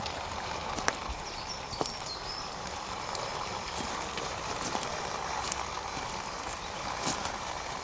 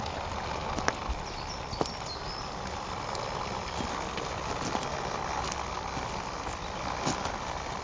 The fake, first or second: first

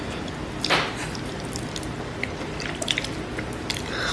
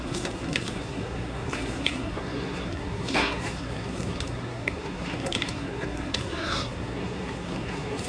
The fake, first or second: second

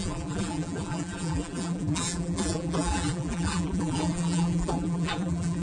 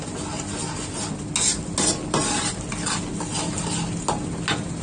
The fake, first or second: first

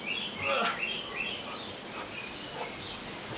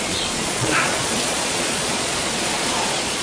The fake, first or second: second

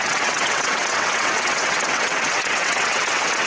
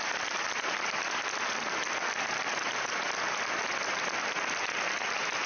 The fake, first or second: first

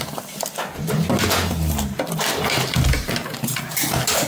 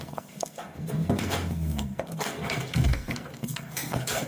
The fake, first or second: second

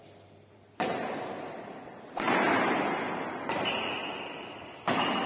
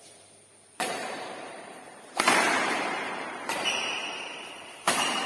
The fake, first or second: second